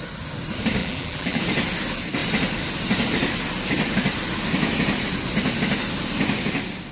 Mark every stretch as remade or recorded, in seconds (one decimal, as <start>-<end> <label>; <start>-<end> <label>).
0.0-0.8 recorded; 0.8-1.4 remade; 1.4-6.9 recorded